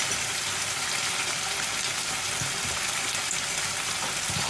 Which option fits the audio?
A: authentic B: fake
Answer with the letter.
A